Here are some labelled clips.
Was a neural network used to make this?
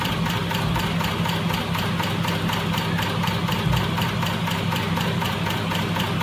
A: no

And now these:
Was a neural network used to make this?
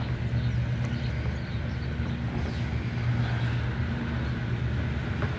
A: no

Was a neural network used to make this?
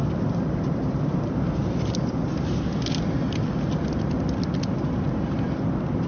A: no